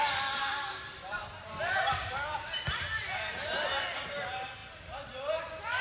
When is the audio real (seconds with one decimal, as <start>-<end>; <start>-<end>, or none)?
0.0-0.9; 2.5-4.6

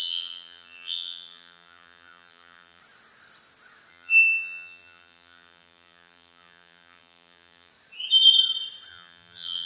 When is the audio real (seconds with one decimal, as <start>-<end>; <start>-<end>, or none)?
2.8-3.9; 7.7-8.9

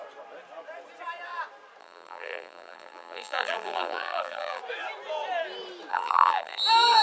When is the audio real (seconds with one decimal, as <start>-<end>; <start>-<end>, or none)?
0.0-1.8; 4.6-5.9; 6.6-7.0

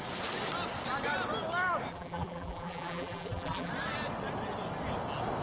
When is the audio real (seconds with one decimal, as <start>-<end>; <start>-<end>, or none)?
0.0-1.9; 3.7-5.4

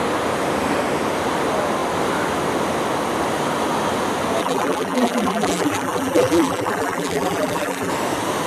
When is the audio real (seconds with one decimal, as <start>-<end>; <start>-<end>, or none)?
0.0-4.4; 7.9-8.5